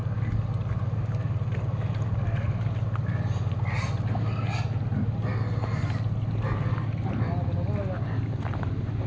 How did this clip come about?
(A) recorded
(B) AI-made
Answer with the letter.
A